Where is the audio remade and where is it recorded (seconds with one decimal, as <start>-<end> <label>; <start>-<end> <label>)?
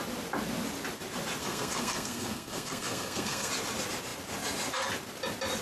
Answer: 0.0-1.4 recorded; 1.4-3.5 remade; 3.5-5.6 recorded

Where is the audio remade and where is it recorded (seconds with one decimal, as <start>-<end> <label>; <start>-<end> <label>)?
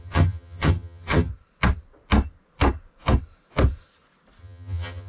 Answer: 0.0-1.3 remade; 1.3-4.4 recorded; 4.4-5.1 remade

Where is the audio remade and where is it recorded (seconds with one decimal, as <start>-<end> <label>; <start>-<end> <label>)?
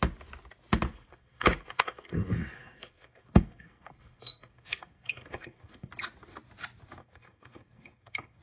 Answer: 0.0-0.9 recorded; 0.9-5.9 remade; 5.9-7.0 recorded; 7.0-8.4 remade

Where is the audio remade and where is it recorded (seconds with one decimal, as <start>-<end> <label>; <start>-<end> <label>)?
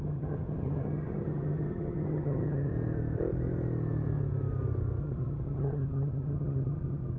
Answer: 0.0-2.7 remade; 2.7-5.0 recorded; 5.0-7.2 remade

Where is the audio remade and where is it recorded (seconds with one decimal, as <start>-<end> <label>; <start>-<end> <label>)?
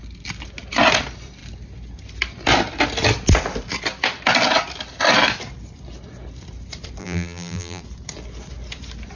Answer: 0.0-7.0 recorded; 7.0-7.8 remade; 7.8-9.2 recorded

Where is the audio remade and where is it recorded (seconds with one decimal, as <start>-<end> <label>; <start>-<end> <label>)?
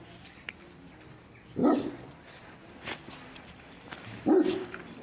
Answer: 0.0-5.0 recorded